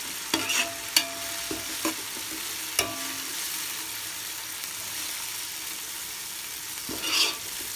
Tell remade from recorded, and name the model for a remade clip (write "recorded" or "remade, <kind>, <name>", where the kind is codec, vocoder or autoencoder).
recorded